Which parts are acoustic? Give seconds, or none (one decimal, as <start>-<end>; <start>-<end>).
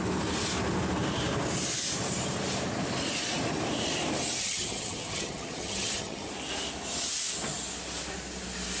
0.0-4.4; 6.3-8.8